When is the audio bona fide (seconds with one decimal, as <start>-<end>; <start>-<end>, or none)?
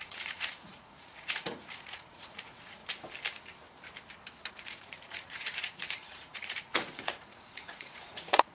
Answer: 2.8-4.5